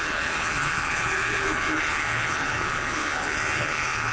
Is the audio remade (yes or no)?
yes